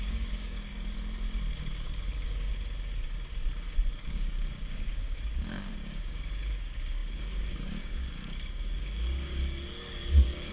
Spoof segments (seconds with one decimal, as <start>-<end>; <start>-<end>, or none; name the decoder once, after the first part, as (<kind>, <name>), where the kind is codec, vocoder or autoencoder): 0.0-0.7 (codec, DAC); 1.6-2.5; 4.0-10.5